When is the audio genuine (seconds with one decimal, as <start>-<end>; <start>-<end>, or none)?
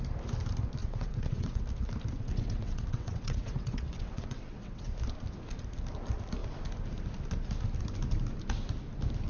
0.0-0.8; 1.6-2.1; 4.9-9.3